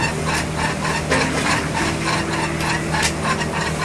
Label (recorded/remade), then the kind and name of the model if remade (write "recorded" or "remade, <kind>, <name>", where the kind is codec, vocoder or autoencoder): recorded